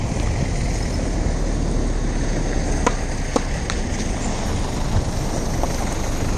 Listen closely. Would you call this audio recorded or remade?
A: recorded